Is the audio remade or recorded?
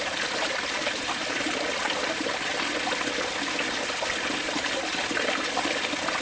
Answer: recorded